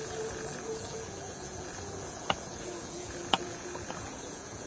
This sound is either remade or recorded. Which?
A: remade